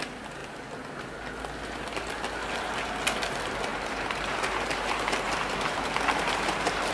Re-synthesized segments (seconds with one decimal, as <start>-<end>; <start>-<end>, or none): 3.7-6.9